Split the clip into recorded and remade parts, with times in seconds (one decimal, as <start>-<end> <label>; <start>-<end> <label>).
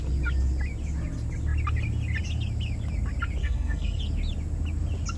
0.0-3.4 recorded; 3.4-4.0 remade; 4.0-5.2 recorded